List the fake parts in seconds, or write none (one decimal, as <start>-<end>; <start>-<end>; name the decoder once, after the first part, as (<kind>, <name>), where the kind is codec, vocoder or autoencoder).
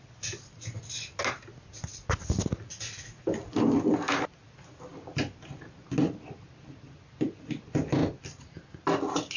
none